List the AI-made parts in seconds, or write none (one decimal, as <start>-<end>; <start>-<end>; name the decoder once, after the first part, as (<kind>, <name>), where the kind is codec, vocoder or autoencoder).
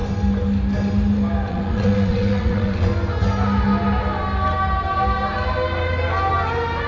1.5-2.9 (vocoder, WaveNeXt)